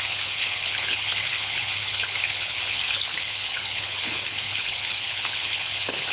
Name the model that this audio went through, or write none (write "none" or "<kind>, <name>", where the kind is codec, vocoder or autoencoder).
codec, HILCodec